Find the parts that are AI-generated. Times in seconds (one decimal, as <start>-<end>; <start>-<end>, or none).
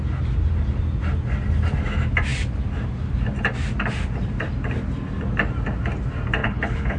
6.4-7.0